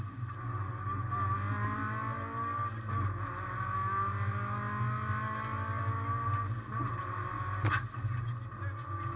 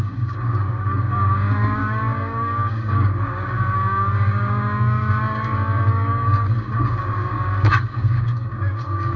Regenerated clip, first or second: second